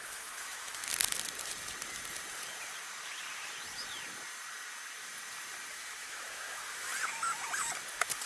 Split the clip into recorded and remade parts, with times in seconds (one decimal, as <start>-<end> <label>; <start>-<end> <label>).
0.0-0.8 remade; 0.8-5.7 recorded; 5.7-6.9 remade; 6.9-8.3 recorded